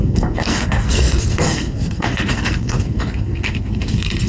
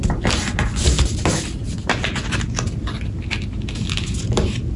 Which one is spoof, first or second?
first